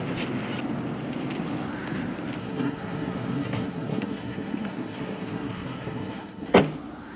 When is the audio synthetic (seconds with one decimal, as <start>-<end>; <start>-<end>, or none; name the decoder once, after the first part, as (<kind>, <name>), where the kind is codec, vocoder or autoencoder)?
2.4-6.6 (codec, SNAC)